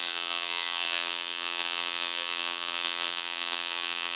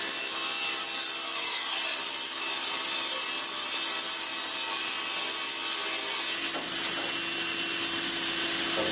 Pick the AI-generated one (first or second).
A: first